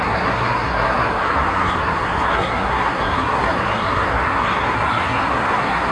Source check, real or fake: fake